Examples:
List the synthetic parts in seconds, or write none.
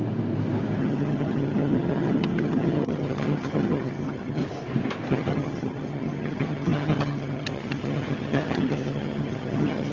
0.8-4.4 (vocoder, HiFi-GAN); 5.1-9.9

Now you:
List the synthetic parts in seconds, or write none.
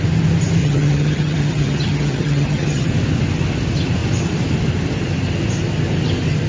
0.6-2.9 (vocoder, HiFi-GAN)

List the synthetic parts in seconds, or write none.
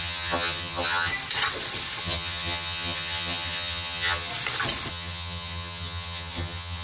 0.0-1.1 (vocoder, HiFi-GAN); 2.0-4.3; 4.9-6.8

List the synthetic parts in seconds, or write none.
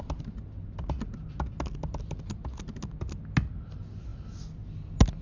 none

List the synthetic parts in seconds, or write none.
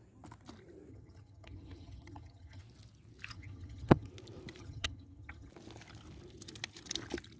0.9-2.6 (vocoder, HiFi-GAN); 3.3-4.1; 4.6-5.5